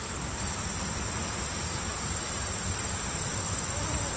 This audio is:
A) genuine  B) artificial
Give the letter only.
A